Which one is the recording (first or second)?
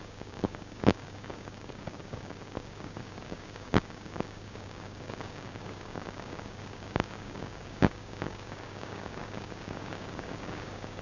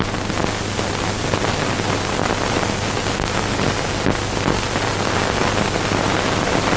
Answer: second